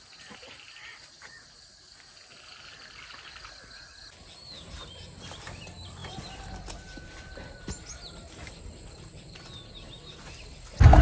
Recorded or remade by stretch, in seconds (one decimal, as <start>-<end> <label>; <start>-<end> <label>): 0.0-11.0 recorded